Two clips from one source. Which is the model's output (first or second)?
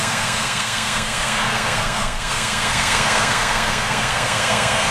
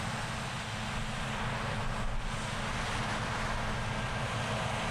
first